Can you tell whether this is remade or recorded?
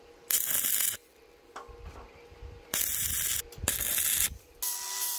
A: recorded